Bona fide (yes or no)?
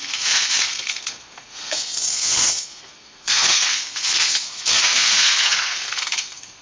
no